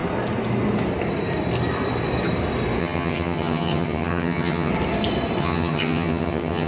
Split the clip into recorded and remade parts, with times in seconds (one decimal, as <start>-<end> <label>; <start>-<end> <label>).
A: 0.0-2.8 recorded; 2.8-4.7 remade; 4.7-5.4 recorded; 5.4-6.7 remade